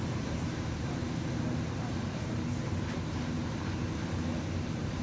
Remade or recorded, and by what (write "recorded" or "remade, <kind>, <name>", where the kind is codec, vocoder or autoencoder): remade, vocoder, BigVGAN v2